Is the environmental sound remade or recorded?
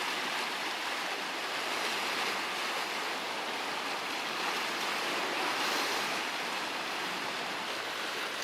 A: recorded